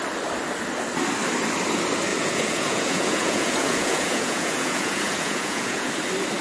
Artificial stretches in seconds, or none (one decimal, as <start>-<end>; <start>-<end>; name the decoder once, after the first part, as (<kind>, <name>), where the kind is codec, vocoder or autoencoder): 2.1-5.9 (vocoder, Vocos)